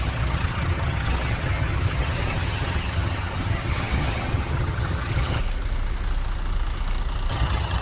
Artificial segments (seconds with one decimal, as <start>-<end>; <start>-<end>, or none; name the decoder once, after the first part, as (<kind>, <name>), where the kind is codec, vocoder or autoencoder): 0.0-5.4 (vocoder, HiFi-GAN); 7.3-7.8